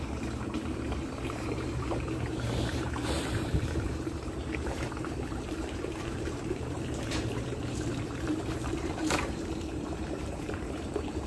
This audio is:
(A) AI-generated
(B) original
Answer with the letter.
A